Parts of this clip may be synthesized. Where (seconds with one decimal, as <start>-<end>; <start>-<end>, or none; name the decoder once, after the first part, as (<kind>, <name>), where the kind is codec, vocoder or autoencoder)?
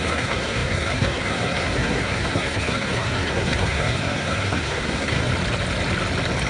0.0-5.3 (codec, SNAC)